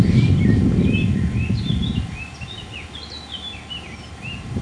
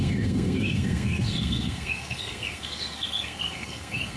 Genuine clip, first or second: first